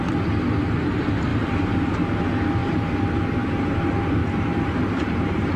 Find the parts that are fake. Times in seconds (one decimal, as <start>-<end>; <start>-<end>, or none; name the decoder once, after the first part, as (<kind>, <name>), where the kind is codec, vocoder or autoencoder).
1.3-1.9 (vocoder, BigVGAN v2); 2.6-3.2; 4.2-5.6